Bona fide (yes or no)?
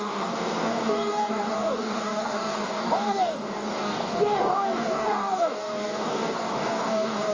no